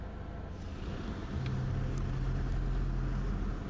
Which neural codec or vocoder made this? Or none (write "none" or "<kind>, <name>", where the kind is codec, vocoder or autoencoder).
none